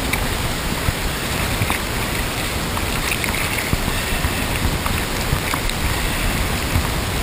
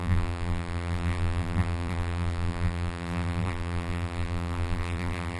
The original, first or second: first